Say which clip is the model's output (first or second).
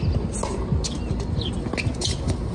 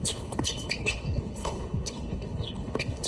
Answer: second